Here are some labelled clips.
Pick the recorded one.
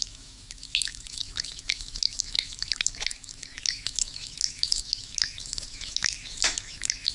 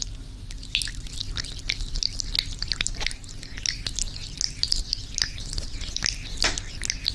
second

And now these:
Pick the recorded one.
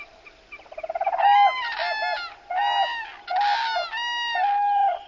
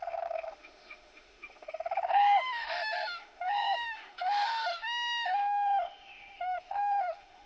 first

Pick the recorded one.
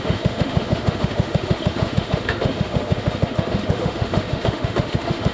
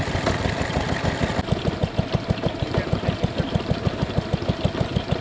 second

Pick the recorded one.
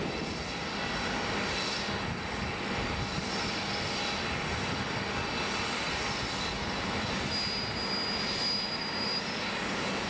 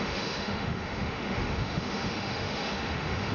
first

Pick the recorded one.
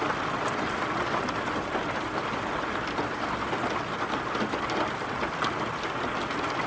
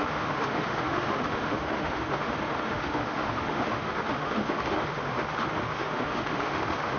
first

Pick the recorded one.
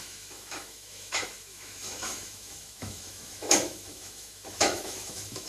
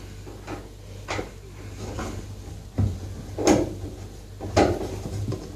second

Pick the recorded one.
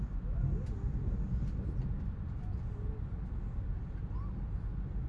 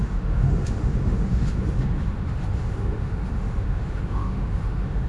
first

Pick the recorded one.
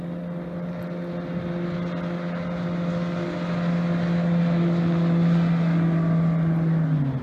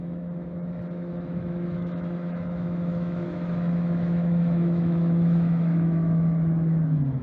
first